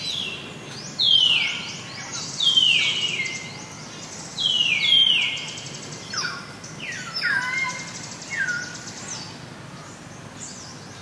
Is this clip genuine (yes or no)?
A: yes